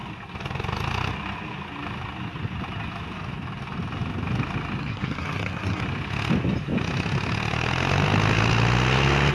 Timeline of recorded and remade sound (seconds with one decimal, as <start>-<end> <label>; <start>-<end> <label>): 0.0-4.8 recorded; 4.8-5.8 remade; 5.8-9.3 recorded